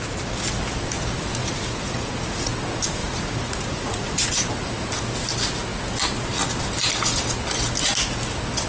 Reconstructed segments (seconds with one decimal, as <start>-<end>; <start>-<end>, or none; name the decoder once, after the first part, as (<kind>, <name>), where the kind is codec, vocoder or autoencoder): 1.4-2.5 (vocoder, Vocos); 3.0-4.3